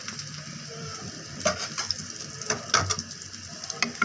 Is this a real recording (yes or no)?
yes